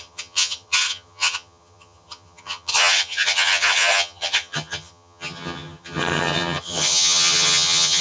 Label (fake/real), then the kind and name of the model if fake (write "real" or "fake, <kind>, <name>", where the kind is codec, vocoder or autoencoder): fake, vocoder, HiFi-GAN